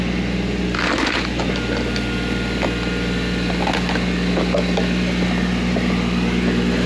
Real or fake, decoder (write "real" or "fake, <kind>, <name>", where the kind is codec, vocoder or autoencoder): real